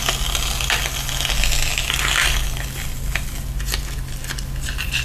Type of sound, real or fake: real